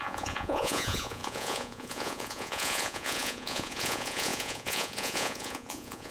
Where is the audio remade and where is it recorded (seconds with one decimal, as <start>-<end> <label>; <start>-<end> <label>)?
0.0-6.1 remade